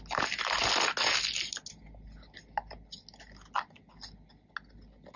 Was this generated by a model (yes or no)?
no